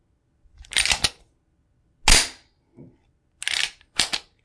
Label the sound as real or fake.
real